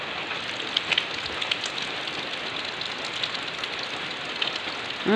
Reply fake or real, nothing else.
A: real